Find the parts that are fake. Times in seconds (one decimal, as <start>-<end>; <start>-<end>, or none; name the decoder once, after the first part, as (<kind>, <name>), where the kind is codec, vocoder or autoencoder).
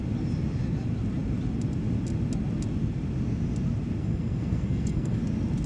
4.0-5.2 (codec, SNAC)